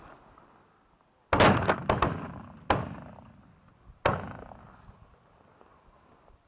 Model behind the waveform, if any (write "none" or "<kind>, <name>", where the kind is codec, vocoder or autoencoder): none